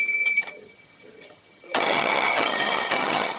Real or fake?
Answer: fake